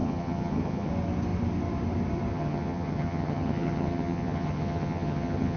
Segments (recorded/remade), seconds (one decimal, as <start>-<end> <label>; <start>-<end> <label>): 0.0-0.9 remade; 0.9-2.3 recorded; 2.3-5.6 remade

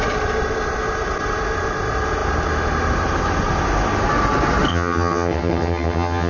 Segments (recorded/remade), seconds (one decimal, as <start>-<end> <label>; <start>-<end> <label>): 0.0-4.7 recorded; 4.7-6.3 remade

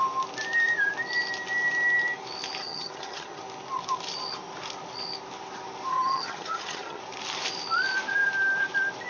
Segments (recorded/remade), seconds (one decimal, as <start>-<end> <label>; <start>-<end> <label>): 0.0-2.6 recorded; 2.6-3.4 remade; 3.4-5.9 recorded; 5.9-7.0 remade; 7.0-9.1 recorded

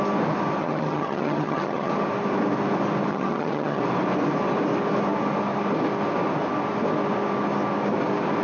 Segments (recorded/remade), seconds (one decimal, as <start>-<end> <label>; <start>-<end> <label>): 0.0-0.6 recorded; 0.6-1.9 remade; 1.9-3.1 recorded; 3.1-3.8 remade; 3.8-8.4 recorded

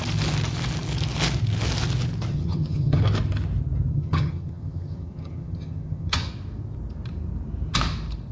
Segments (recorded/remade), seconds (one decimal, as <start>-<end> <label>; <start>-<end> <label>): 0.0-2.3 recorded; 2.3-3.0 remade; 3.0-3.9 recorded; 3.9-6.3 remade; 6.3-8.3 recorded